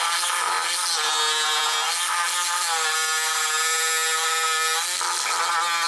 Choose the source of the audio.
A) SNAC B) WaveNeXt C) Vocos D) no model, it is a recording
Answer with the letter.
D